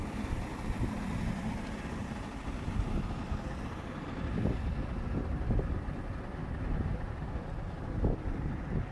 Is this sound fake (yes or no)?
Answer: no